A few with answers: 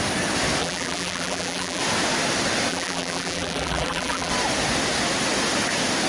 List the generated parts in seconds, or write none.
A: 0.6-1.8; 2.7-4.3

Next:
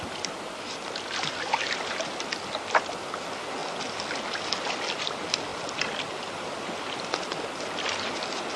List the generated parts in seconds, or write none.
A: 5.5-7.2

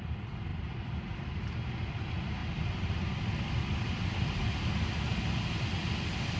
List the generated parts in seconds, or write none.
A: 0.5-1.4; 2.4-4.6